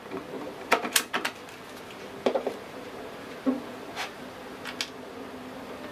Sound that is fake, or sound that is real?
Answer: real